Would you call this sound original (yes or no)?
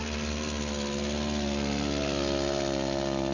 yes